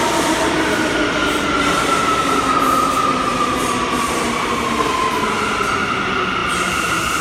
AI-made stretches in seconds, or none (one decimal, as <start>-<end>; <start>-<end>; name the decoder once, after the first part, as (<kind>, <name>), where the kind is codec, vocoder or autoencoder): none